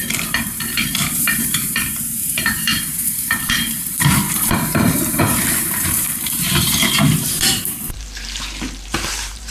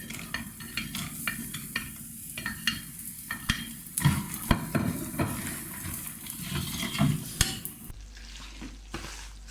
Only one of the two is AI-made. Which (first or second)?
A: first